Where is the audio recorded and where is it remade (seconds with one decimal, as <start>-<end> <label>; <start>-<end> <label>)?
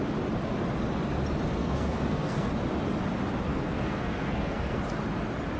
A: 0.0-1.6 recorded; 1.6-2.5 remade; 2.5-3.5 recorded; 3.5-4.8 remade; 4.8-5.6 recorded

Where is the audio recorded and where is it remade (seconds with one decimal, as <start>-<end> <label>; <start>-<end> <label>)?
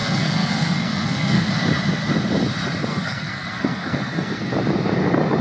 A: 0.0-1.5 remade; 1.5-2.9 recorded; 2.9-4.5 remade; 4.5-5.4 recorded